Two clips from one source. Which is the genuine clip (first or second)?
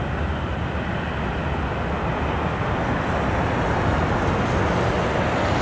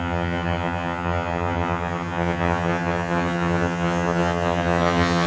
first